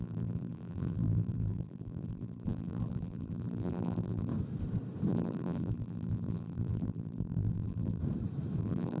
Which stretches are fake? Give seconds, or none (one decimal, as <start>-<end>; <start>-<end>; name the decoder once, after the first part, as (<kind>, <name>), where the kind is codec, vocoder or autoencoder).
0.0-4.3 (vocoder, BigVGAN v2); 5.1-8.0; 8.6-9.0